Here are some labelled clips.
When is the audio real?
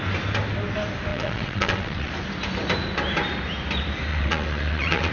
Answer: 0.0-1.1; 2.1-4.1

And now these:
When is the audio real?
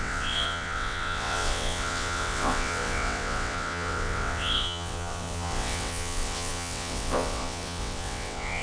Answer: none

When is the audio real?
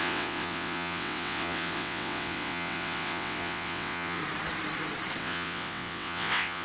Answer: 4.2-5.2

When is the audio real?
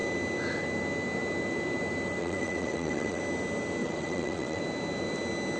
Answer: 0.0-2.2; 3.2-3.8; 4.6-5.6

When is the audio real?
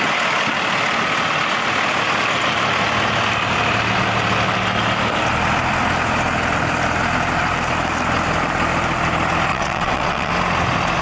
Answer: 0.0-9.5; 10.3-11.0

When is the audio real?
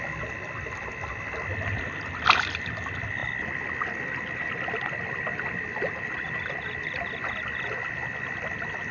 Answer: 0.0-8.9